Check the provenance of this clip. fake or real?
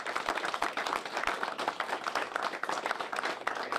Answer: real